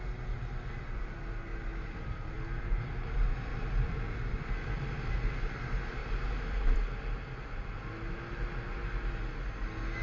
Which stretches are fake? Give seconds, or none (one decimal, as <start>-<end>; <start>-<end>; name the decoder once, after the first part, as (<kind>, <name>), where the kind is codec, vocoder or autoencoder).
3.5-4.3 (vocoder, BigVGAN v2); 6.0-7.0